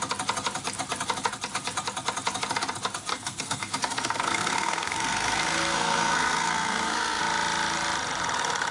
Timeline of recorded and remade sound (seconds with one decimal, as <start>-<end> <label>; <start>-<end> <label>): 0.0-3.1 recorded; 3.1-7.2 remade; 7.2-8.7 recorded